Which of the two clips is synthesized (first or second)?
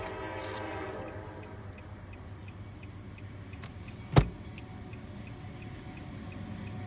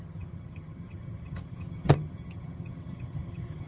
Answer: second